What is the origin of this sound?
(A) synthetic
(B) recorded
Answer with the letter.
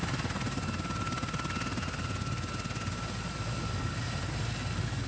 B